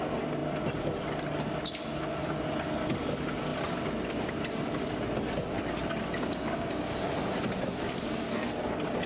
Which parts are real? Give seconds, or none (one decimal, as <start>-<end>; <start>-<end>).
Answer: 0.0-8.2; 8.7-9.1